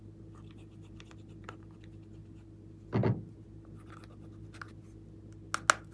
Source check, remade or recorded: recorded